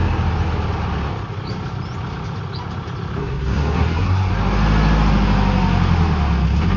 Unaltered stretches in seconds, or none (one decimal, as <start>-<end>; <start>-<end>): 0.0-3.2; 4.3-6.8